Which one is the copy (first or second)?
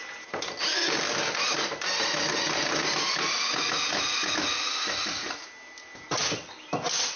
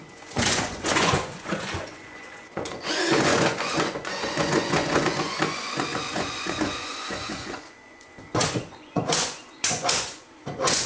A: second